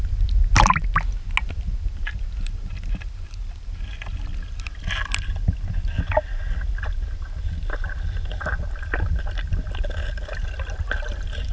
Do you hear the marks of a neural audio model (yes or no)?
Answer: no